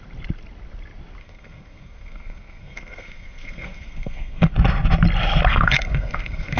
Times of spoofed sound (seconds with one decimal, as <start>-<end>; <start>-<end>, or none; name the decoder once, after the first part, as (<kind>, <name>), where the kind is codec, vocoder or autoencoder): 1.2-4.5 (codec, SNAC); 5.5-6.6